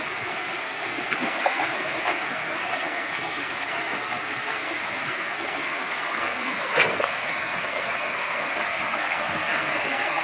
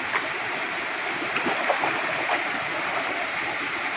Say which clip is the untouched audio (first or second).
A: second